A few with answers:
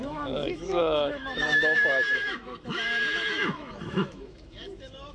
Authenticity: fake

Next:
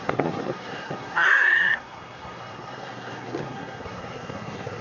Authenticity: fake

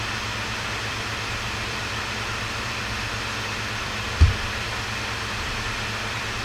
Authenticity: fake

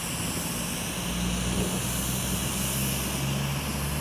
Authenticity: real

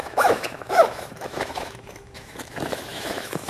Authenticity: fake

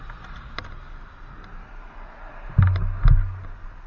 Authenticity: real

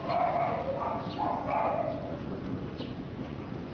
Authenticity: fake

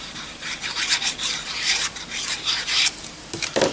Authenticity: fake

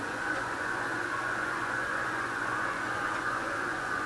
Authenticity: fake